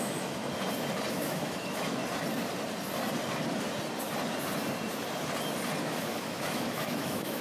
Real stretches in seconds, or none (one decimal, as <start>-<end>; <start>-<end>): 0.4-1.1; 2.0-5.8

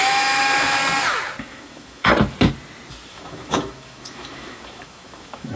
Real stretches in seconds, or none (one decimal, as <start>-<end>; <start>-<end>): 0.8-1.4; 2.1-3.1

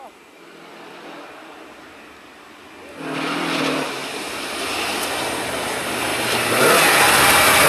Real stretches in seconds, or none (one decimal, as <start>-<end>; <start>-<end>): 0.0-7.7

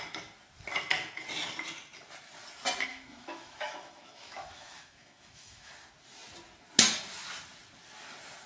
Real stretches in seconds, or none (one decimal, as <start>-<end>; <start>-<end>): 0.0-2.9; 5.7-8.5